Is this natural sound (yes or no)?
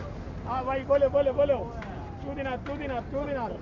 yes